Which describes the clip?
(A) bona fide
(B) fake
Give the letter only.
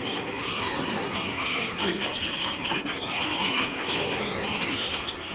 B